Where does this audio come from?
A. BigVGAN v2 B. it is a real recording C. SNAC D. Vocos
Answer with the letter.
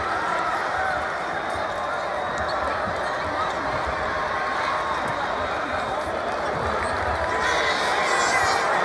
A